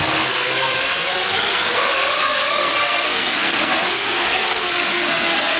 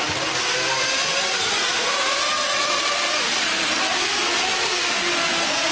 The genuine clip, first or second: second